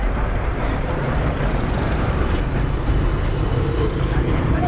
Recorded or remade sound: remade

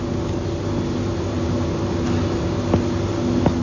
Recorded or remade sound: recorded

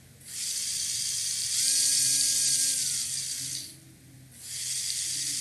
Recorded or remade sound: recorded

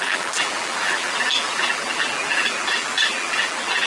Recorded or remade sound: remade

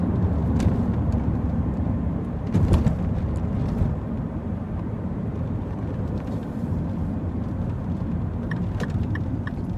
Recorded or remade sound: remade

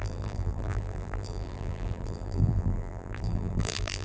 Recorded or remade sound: remade